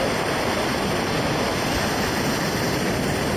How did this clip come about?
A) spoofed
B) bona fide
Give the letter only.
B